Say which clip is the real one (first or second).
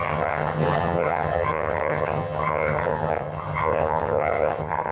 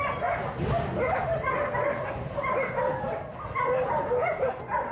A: second